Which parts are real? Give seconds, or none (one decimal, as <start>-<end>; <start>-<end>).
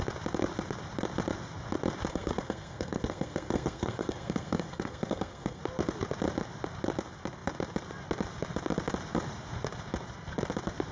0.0-2.1; 5.6-10.9